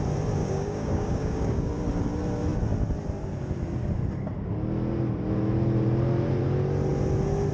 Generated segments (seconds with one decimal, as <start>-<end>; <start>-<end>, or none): 0.4-1.7